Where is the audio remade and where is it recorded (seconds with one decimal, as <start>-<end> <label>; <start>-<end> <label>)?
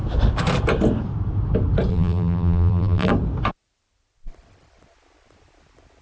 0.0-1.9 recorded; 1.9-3.1 remade; 3.1-6.0 recorded